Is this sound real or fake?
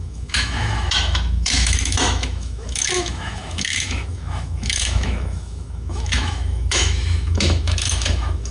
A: fake